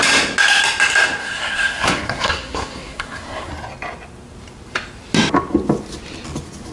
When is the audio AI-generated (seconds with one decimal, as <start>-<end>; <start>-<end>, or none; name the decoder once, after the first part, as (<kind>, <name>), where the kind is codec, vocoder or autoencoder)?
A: 1.2-3.5 (codec, SNAC)